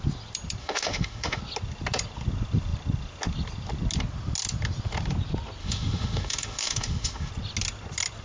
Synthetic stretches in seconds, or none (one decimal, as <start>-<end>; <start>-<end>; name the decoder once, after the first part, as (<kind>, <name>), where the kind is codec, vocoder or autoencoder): 0.6-1.4 (autoencoder, DAC-VAE); 5.6-7.3